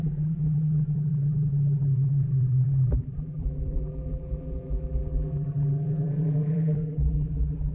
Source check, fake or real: fake